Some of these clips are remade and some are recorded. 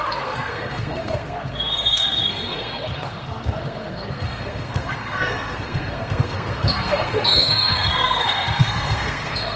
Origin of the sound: remade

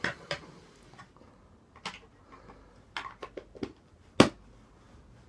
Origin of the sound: recorded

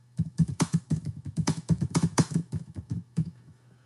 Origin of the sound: remade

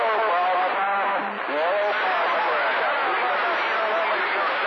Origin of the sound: recorded